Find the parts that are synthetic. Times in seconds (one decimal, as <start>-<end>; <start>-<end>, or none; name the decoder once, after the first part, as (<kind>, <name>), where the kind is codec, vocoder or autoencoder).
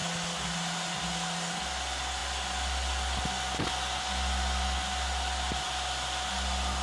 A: none